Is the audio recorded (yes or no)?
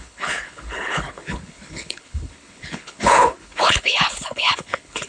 no